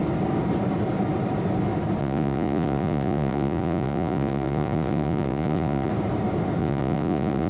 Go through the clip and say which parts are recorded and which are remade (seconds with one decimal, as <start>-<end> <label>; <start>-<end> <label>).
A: 0.0-2.0 recorded; 2.0-5.9 remade; 5.9-6.6 recorded; 6.6-7.5 remade